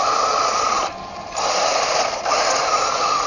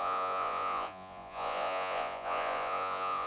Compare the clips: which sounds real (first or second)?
first